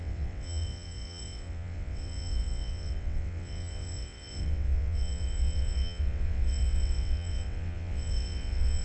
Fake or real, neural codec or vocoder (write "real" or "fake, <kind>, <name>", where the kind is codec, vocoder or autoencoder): fake, vocoder, WaveNeXt